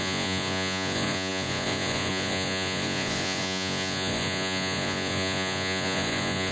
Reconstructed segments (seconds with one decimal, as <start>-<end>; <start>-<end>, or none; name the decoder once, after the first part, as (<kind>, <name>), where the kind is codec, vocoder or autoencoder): 0.0-6.5 (vocoder, Vocos)